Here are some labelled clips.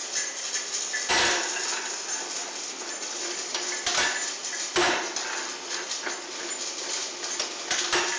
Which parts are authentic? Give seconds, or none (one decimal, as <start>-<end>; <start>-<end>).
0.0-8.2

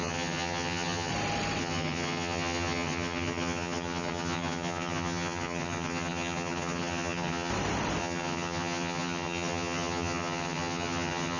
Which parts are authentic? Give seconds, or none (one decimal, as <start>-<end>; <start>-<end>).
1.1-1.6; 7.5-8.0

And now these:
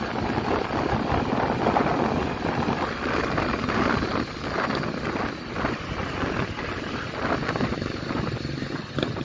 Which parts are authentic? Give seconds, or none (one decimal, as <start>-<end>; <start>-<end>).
0.0-9.2

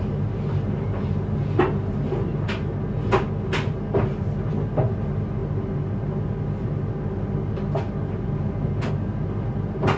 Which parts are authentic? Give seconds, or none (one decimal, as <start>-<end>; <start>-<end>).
0.0-10.0

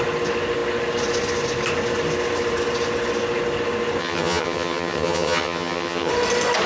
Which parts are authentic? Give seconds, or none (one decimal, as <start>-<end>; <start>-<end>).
0.0-4.0; 6.1-6.7

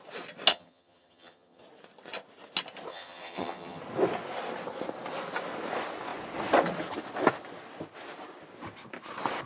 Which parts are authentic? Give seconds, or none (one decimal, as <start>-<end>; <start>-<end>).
0.0-0.5; 1.6-2.9; 3.8-9.4